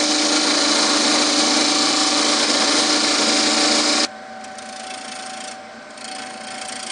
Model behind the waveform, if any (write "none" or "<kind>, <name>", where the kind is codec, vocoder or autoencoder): none